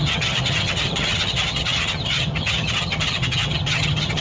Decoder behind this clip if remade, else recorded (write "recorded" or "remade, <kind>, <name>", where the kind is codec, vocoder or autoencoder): remade, vocoder, HiFi-GAN